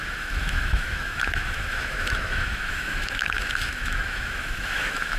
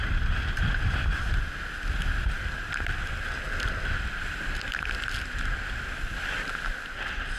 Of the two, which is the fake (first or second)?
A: first